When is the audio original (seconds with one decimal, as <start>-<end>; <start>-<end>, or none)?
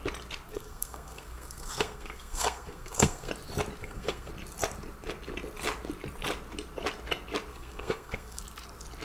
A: 0.0-0.5; 3.3-3.8; 4.3-7.5; 8.4-9.0